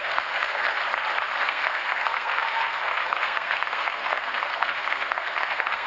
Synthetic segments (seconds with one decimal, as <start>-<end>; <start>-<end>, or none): 0.0-0.8; 1.4-5.9